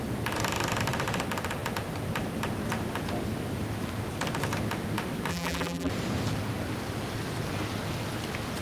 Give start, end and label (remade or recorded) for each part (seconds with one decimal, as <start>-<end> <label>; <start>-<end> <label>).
0.0-5.3 recorded; 5.3-5.9 remade; 5.9-8.6 recorded